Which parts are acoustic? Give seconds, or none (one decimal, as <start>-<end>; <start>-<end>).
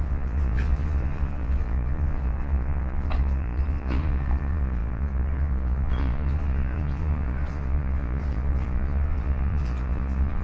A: none